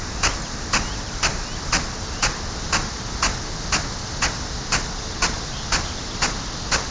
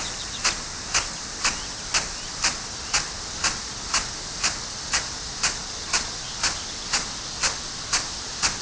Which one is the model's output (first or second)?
second